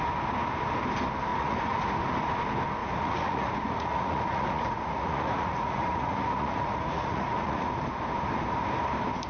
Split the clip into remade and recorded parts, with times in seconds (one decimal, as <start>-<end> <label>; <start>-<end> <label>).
0.0-1.3 recorded; 1.3-1.9 remade; 1.9-2.8 recorded; 2.8-7.7 remade; 7.7-9.3 recorded